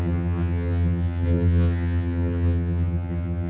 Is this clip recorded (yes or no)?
no